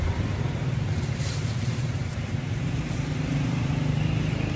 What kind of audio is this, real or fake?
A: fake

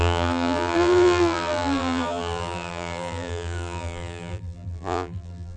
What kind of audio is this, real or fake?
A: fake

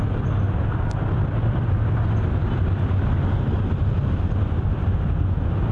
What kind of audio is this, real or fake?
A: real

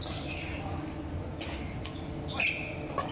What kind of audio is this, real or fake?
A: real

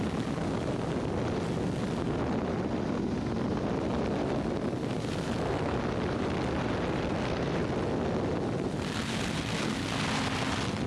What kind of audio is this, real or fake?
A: real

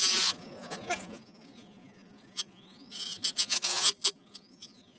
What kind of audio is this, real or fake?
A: fake